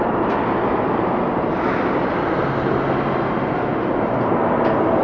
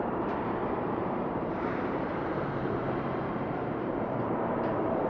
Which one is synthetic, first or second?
second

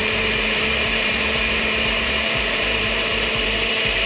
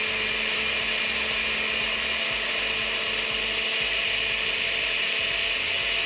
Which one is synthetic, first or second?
first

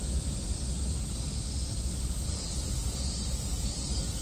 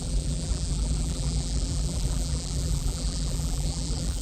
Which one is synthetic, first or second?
second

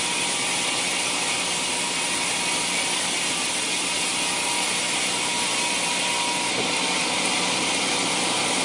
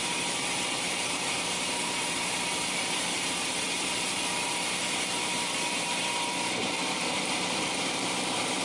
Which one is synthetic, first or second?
second